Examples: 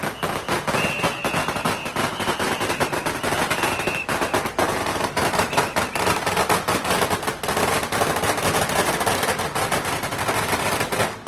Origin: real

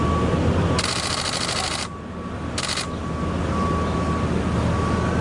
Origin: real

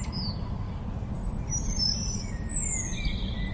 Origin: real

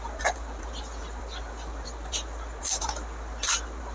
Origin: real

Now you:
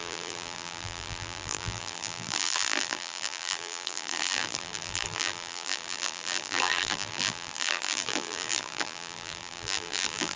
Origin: fake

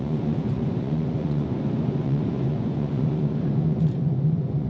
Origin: fake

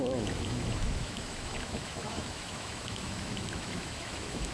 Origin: fake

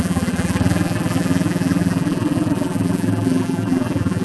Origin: fake